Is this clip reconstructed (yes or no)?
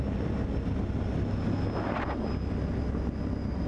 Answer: no